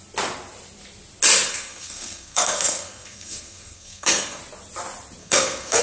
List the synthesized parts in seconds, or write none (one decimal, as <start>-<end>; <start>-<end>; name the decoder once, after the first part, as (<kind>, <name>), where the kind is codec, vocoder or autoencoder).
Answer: 1.5-4.4 (codec, SNAC); 5.2-5.8